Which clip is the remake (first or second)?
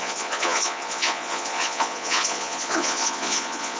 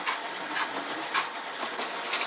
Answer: first